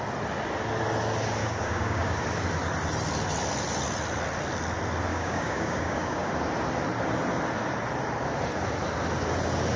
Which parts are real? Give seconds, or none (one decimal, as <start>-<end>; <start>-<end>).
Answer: 0.0-1.4; 2.2-5.1; 6.3-9.8